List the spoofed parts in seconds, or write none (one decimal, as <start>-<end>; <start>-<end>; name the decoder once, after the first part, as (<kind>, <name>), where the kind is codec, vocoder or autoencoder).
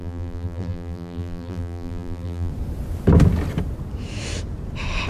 0.0-2.5 (vocoder, BigVGAN v2)